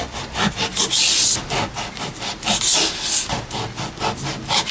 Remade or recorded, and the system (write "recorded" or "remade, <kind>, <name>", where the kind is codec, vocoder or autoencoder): recorded